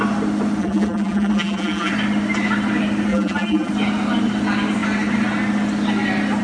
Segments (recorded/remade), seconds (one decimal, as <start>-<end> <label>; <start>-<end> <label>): 0.0-0.6 recorded; 0.6-1.9 remade; 1.9-3.1 recorded; 3.1-3.7 remade; 3.7-6.4 recorded